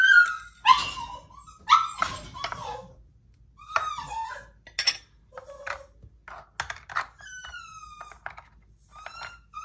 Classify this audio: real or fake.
real